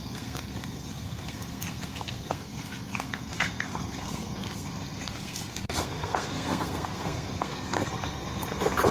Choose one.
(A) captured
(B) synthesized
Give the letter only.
B